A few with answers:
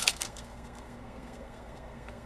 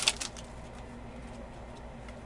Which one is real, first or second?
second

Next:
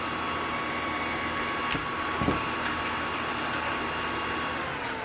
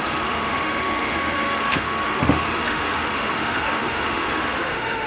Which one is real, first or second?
first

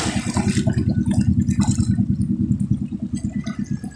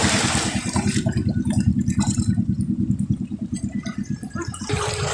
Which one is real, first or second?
first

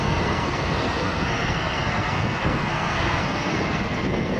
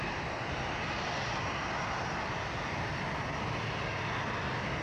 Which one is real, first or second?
second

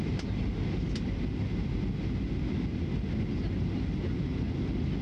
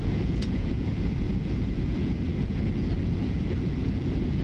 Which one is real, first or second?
first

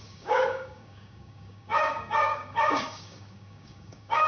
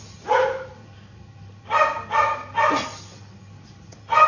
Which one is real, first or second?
second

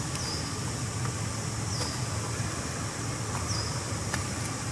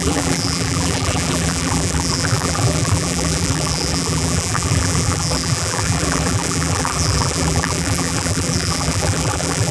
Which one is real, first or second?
first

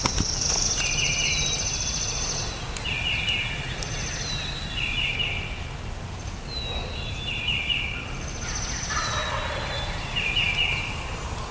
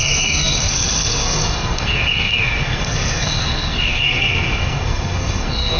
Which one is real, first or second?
first